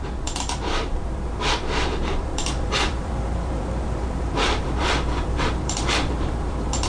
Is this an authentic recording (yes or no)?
no